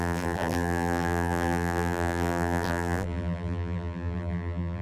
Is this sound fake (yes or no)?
yes